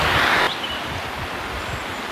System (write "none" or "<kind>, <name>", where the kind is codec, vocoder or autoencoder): none